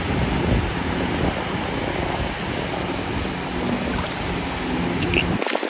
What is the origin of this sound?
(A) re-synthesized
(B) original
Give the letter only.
B